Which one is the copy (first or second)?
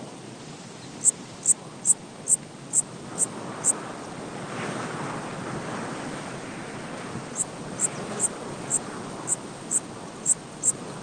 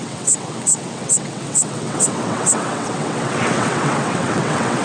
second